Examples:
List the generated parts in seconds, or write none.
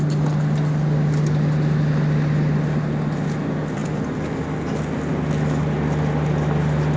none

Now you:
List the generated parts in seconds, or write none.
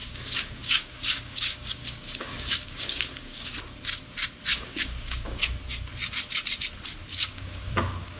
0.0-3.5; 4.5-5.6; 7.1-8.2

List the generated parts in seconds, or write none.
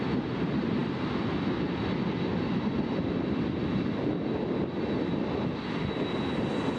none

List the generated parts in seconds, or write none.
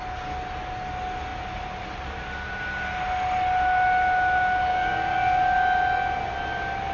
4.7-5.4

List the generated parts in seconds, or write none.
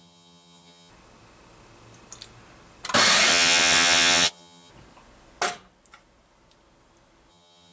0.0-0.9; 3.3-4.7; 7.3-7.7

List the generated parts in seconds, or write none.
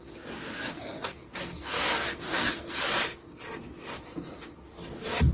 0.7-2.8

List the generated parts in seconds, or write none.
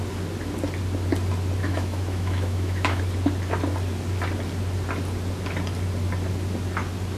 1.6-3.0